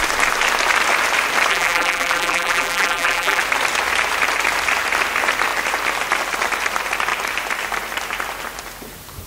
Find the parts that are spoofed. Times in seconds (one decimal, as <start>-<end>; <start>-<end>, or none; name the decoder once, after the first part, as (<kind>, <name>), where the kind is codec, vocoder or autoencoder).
1.5-3.4 (vocoder, BigVGAN v2)